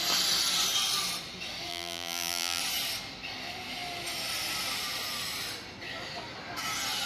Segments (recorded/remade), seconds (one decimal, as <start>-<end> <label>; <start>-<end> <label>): 0.0-1.7 recorded; 1.7-2.6 remade; 2.6-7.1 recorded